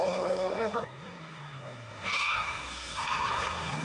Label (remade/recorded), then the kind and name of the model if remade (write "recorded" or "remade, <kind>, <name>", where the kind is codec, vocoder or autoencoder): remade, codec, SNAC